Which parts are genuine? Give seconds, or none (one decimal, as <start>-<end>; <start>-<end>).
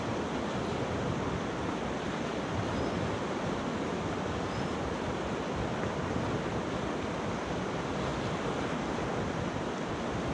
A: 0.0-10.3